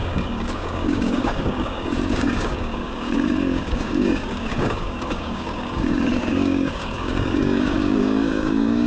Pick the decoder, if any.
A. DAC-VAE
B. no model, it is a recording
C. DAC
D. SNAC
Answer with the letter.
C